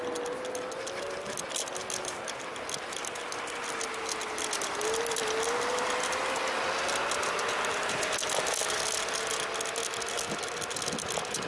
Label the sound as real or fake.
real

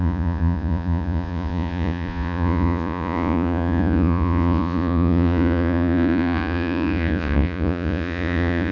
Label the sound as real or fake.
fake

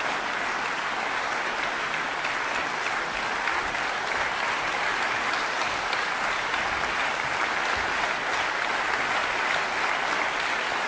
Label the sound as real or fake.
real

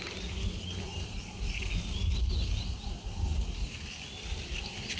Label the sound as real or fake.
real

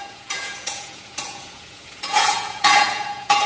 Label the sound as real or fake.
fake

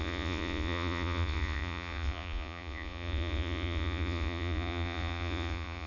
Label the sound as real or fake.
fake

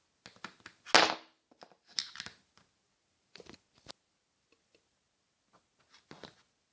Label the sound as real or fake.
real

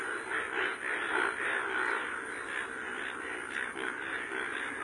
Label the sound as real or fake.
real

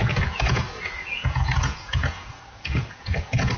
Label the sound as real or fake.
fake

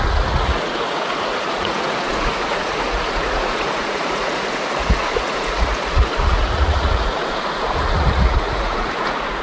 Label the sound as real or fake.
fake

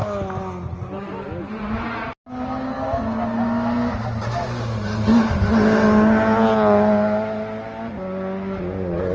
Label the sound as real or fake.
real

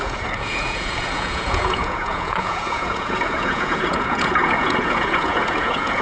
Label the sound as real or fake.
fake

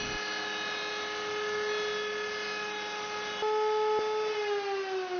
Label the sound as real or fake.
real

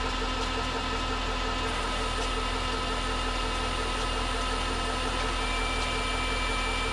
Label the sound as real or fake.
real